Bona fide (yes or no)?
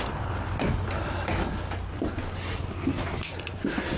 yes